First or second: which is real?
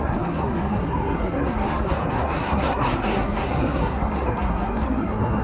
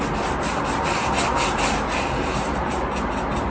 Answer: second